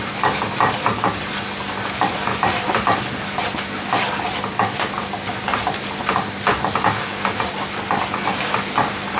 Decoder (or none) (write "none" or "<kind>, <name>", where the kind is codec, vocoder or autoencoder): none